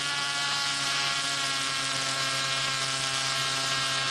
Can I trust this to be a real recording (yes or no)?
yes